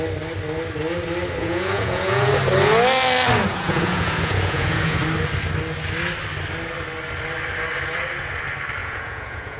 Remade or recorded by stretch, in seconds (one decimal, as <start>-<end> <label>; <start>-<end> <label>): 0.0-1.4 recorded; 1.4-2.3 remade; 2.3-3.5 recorded; 3.5-5.0 remade; 5.0-8.8 recorded; 8.8-9.6 remade